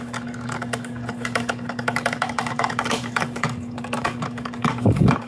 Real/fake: fake